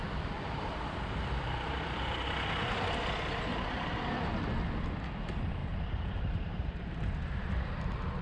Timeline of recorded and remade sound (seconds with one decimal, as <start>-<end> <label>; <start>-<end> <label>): 0.0-2.0 remade; 2.0-3.5 recorded; 3.5-4.3 remade; 4.3-5.6 recorded; 5.6-7.1 remade; 7.1-8.2 recorded